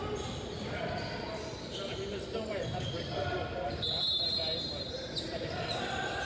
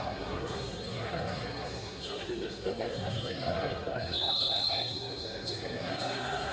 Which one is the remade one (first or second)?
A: second